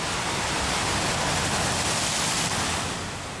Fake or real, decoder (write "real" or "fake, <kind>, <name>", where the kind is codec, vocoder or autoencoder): real